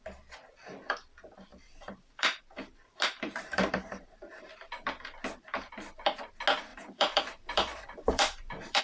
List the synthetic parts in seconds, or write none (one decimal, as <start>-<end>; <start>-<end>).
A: 1.5-4.5; 6.7-8.8